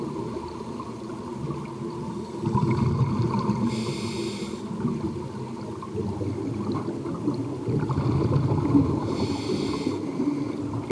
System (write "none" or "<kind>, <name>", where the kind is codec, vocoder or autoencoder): none